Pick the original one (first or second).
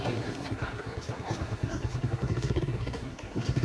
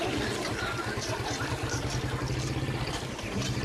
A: second